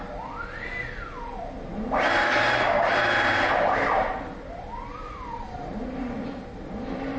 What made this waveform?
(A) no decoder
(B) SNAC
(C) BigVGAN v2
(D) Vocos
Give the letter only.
A